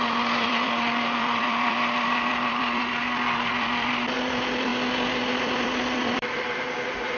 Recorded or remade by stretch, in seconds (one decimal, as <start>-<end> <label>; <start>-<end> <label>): 0.0-4.7 remade; 4.7-5.3 recorded; 5.3-7.2 remade